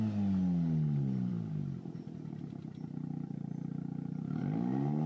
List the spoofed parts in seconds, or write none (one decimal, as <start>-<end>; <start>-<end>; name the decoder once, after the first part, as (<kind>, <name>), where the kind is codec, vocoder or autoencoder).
none